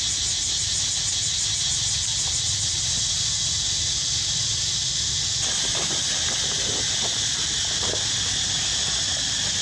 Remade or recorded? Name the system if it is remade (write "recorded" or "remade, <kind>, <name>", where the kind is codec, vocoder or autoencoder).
recorded